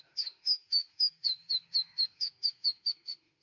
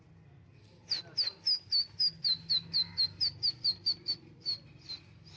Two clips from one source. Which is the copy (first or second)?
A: first